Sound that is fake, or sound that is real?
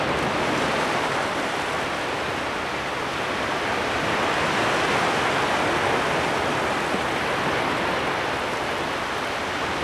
real